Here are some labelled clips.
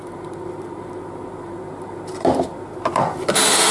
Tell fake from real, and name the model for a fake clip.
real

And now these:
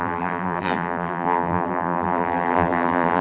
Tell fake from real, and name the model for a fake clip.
fake, vocoder, BigVGAN v2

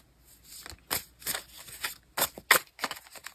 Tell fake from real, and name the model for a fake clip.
real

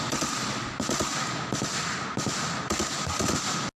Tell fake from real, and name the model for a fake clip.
real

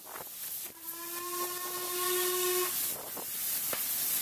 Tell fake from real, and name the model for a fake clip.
real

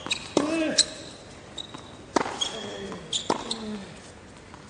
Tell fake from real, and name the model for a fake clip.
real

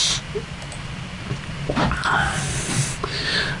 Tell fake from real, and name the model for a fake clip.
real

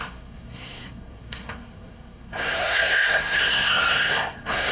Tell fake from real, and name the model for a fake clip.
fake, codec, SNAC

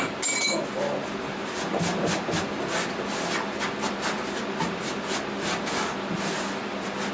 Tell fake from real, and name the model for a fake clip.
real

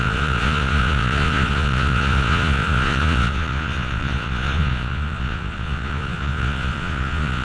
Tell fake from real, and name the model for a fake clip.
fake, vocoder, Vocos